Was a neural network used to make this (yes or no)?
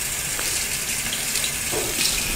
no